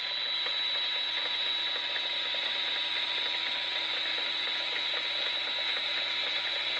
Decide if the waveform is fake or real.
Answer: real